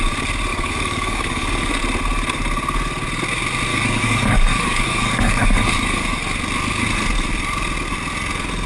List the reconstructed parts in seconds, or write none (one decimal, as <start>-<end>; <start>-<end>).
0.5-1.8; 3.7-6.2